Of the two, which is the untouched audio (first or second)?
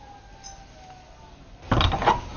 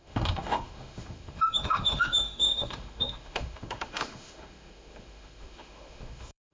first